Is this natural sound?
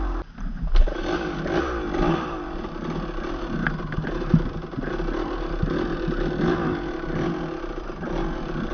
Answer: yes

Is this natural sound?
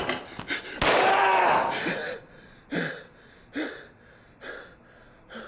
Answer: yes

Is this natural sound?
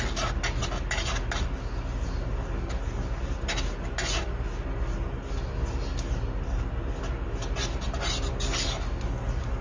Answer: yes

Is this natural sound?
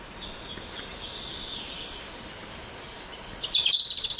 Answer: yes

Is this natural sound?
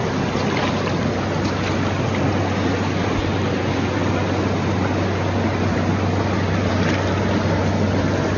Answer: yes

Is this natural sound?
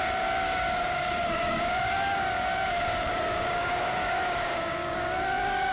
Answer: no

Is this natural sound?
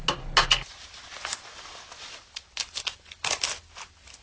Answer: yes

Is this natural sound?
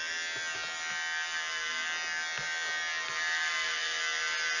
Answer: yes